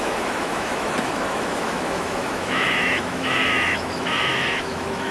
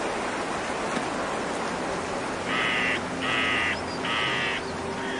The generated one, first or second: first